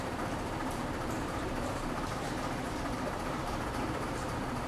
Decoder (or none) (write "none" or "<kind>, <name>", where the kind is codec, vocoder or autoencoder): vocoder, BigVGAN v2